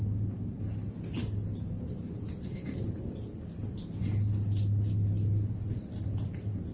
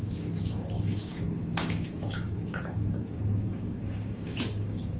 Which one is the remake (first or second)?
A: second